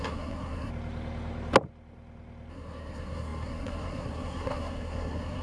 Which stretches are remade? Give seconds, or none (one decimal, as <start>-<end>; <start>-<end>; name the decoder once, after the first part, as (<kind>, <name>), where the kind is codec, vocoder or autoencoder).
0.0-0.7 (codec, SNAC); 2.5-5.4